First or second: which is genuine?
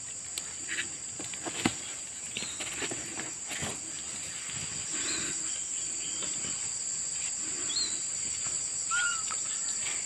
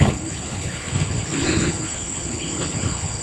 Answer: first